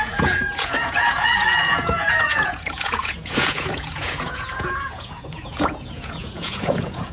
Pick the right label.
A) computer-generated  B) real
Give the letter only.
A